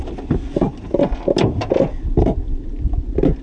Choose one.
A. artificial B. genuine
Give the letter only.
B